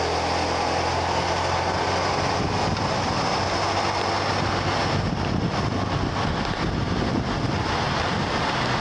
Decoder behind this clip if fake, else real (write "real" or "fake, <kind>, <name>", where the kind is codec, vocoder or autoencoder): real